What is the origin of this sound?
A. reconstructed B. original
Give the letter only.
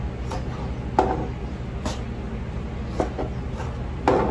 B